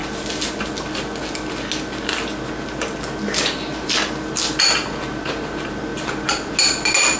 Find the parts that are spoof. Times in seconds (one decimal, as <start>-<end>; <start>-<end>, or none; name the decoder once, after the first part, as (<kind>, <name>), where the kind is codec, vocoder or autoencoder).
none